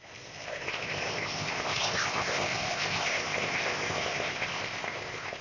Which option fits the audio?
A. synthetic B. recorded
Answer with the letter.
A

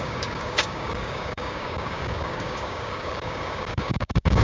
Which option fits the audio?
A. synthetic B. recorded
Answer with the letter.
A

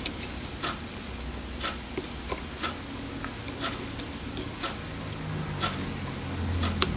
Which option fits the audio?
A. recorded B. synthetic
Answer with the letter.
A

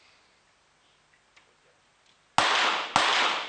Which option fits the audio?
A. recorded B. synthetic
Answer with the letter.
A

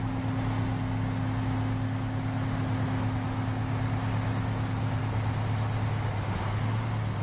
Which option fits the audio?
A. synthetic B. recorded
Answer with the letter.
B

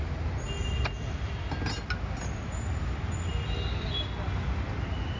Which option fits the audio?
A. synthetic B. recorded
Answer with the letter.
B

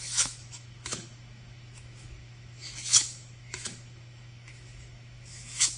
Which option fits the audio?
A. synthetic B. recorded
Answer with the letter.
A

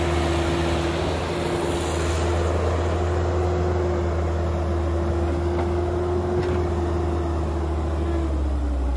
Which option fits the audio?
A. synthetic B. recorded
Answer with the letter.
B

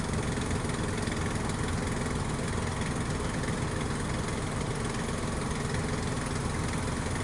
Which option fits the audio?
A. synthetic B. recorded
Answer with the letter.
B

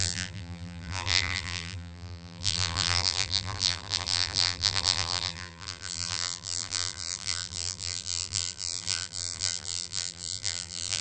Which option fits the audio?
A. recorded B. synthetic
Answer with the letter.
B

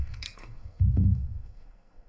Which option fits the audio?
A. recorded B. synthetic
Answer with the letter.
B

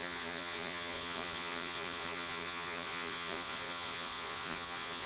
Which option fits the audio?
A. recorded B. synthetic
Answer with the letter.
B